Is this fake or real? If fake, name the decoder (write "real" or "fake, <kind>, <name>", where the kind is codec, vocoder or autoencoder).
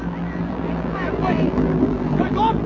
fake, vocoder, BigVGAN v2